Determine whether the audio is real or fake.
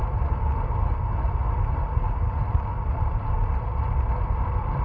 real